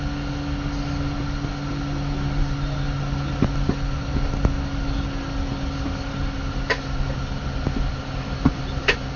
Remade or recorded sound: recorded